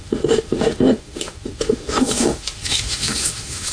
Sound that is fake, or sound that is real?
fake